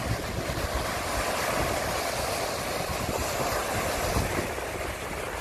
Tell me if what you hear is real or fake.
real